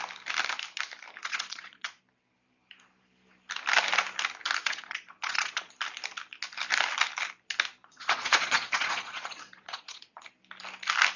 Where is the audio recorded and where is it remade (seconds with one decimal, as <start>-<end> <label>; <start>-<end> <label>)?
0.0-1.2 recorded; 1.2-2.0 remade; 2.0-4.6 recorded; 4.6-5.7 remade; 5.7-7.8 recorded; 7.8-10.2 remade; 10.2-11.2 recorded